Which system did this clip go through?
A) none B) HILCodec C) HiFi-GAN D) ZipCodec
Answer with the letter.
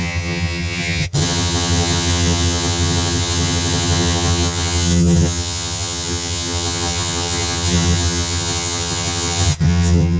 C